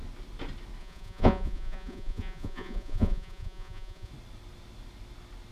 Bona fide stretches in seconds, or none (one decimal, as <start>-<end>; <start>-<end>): 0.0-0.8; 4.1-5.5